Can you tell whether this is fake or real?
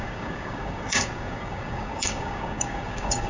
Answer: fake